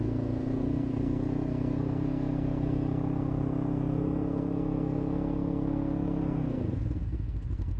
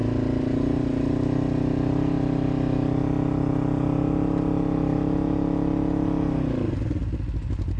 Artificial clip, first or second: first